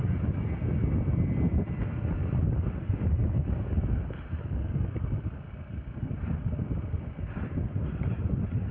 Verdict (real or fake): real